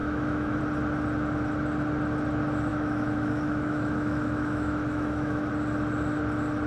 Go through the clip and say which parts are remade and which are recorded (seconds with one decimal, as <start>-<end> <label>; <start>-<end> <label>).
0.0-0.6 remade; 0.6-2.7 recorded; 2.7-5.5 remade; 5.5-6.7 recorded